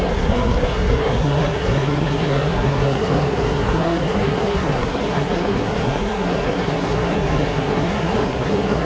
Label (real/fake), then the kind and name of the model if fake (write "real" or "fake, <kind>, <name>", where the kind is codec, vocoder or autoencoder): fake, codec, SNAC